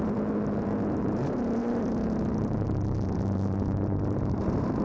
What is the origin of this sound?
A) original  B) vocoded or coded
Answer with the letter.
B